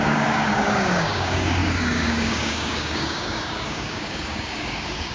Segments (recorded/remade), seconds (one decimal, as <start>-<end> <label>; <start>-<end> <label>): 0.0-5.1 remade